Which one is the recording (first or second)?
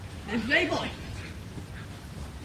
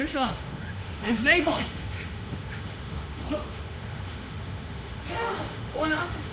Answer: first